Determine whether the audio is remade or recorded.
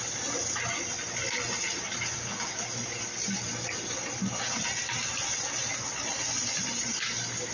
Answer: recorded